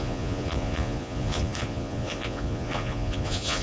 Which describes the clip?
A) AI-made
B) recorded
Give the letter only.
A